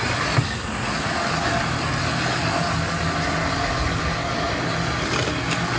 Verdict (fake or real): real